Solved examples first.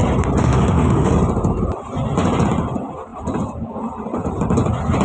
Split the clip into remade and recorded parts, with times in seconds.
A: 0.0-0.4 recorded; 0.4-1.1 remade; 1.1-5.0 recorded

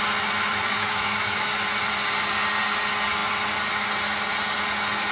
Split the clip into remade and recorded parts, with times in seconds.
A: 0.0-0.7 recorded; 0.7-1.5 remade; 1.5-5.1 recorded

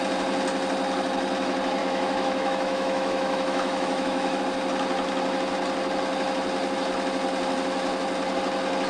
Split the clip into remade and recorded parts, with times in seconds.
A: 0.0-1.8 recorded; 1.8-4.4 remade; 4.4-8.9 recorded

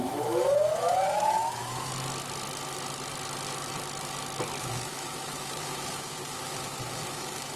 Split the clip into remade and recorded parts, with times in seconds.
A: 0.0-1.9 remade; 1.9-4.6 recorded; 4.6-7.6 remade

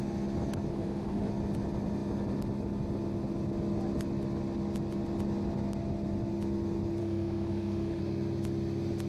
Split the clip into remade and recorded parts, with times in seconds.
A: 0.0-0.7 recorded; 0.7-1.3 remade; 1.3-7.0 recorded; 7.0-8.0 remade; 8.0-9.1 recorded

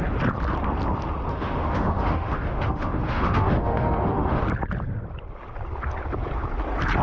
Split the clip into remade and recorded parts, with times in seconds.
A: 0.0-1.3 recorded; 1.3-4.4 remade; 4.4-7.0 recorded

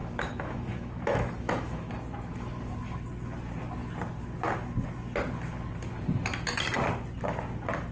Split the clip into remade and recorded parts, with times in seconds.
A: 0.0-1.9 remade; 1.9-7.9 recorded

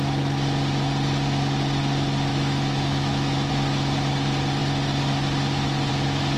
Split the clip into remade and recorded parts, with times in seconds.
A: 0.0-2.3 recorded; 2.3-3.5 remade; 3.5-6.4 recorded